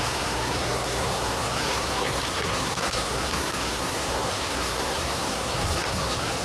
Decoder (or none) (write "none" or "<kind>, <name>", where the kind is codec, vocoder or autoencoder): codec, SNAC